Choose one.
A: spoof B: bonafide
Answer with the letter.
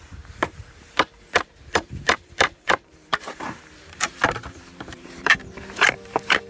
A